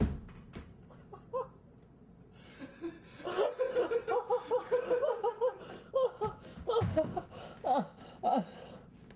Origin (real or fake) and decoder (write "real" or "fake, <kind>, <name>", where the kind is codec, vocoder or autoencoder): real